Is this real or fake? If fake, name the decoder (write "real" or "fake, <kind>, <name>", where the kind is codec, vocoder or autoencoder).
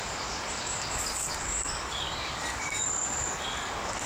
fake, codec, DAC